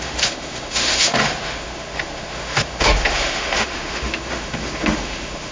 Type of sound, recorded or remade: remade